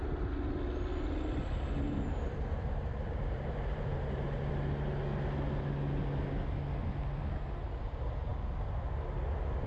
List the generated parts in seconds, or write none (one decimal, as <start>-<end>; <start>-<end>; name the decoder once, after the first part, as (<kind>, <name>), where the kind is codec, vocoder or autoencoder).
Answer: 1.4-4.5 (vocoder, BigVGAN v2)